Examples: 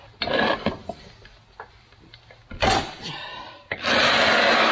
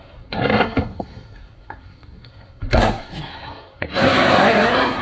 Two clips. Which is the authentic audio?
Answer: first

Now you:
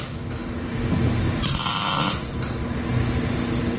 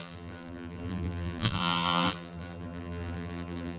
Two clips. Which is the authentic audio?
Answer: first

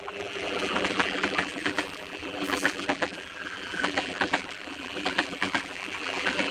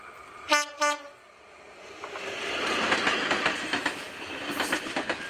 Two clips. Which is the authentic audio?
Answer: second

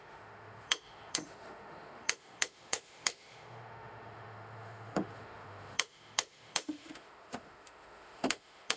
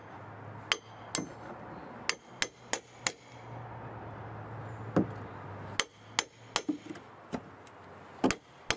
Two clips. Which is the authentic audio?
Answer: second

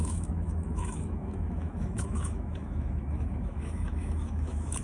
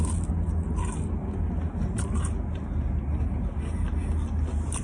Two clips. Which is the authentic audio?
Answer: second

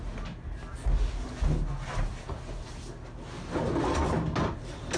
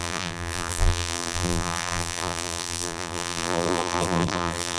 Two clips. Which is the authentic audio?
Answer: first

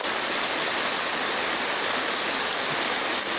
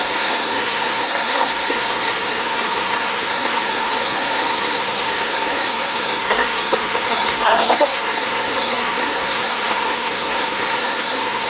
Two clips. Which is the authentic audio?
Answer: first